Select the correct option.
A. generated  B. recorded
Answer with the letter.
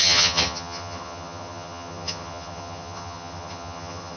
A